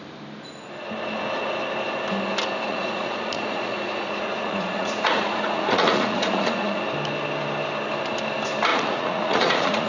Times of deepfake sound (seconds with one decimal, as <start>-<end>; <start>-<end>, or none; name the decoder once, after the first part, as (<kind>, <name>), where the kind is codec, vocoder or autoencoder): 2.7-6.8 (vocoder, Vocos); 8.7-9.9